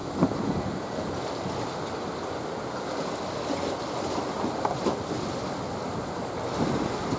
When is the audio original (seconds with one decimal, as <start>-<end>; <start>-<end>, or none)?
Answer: 0.0-7.2